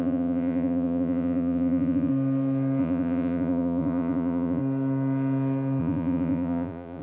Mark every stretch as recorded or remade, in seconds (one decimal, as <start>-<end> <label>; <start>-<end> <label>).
0.0-2.1 remade; 2.1-2.8 recorded; 2.8-4.6 remade; 4.6-5.8 recorded; 5.8-7.0 remade